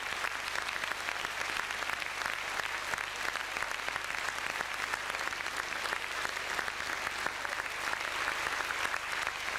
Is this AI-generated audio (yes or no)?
no